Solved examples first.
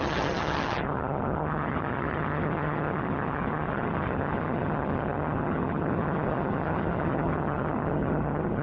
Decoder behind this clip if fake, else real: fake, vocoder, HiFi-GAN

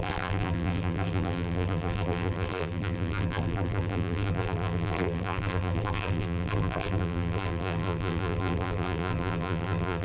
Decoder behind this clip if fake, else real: fake, vocoder, BigVGAN v2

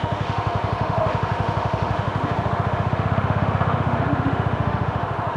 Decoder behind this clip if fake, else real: fake, autoencoder, DAC-VAE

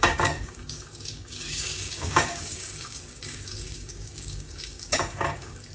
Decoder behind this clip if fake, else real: fake, codec, DAC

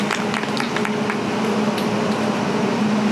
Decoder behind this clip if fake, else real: real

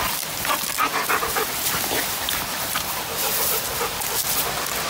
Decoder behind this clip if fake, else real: real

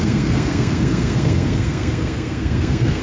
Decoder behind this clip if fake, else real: fake, codec, SNAC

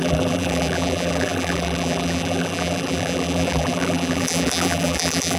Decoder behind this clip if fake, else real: fake, vocoder, BigVGAN v2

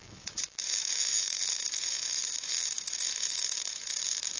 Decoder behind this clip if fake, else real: fake, autoencoder, DAC-VAE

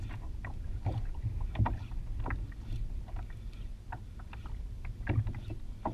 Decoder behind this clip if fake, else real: real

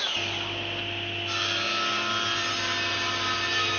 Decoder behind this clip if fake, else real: real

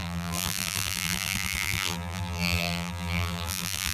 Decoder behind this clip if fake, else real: fake, vocoder, BigVGAN v2